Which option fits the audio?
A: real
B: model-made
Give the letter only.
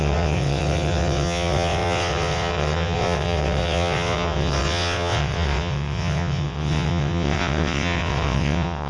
B